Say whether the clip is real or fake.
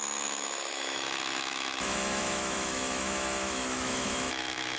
fake